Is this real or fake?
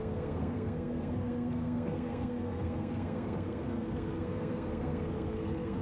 fake